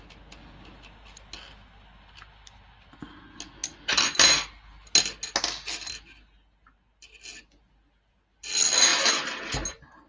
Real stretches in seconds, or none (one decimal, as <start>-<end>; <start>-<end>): 0.0-10.1